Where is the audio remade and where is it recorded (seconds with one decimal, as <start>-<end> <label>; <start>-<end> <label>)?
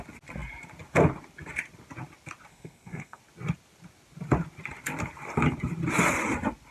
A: 0.0-2.5 recorded; 2.5-3.2 remade; 3.2-6.7 recorded